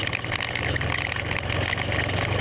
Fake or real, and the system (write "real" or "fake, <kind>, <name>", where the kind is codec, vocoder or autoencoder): real